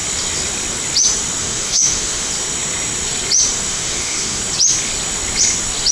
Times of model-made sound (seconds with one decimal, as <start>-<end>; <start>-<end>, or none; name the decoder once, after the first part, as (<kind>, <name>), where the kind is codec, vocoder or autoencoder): 1.4-2.3 (autoencoder, DAC-VAE); 3.7-4.4